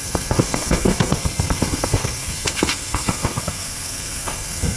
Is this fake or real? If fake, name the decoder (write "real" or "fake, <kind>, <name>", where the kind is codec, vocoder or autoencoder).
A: fake, codec, SNAC